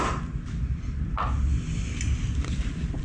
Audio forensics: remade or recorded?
recorded